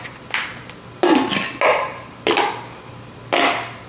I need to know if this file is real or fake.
real